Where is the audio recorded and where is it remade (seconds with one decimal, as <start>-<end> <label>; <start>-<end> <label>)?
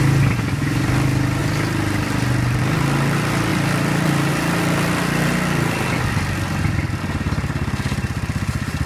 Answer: 0.0-1.4 recorded; 1.4-2.6 remade; 2.6-3.5 recorded; 3.5-4.3 remade; 4.3-8.9 recorded